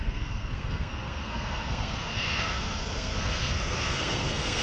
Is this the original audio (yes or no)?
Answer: no